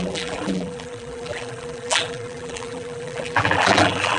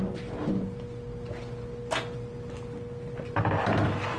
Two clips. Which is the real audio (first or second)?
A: second